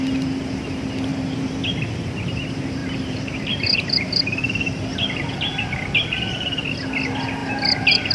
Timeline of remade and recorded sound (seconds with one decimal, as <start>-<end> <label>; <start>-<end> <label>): 0.0-1.1 recorded; 1.1-1.6 remade; 1.6-2.8 recorded; 2.8-6.3 remade; 6.3-7.4 recorded; 7.4-8.1 remade